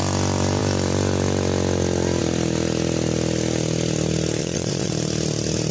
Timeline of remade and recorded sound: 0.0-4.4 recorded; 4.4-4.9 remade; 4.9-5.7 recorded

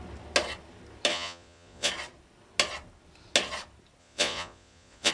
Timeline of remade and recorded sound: 0.0-1.1 recorded; 1.1-1.9 remade; 1.9-4.0 recorded; 4.0-5.1 remade